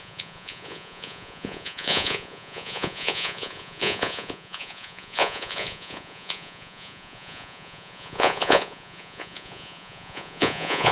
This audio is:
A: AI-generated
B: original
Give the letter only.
A